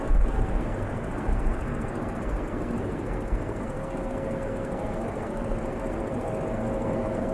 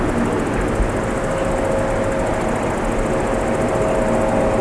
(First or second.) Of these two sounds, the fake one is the first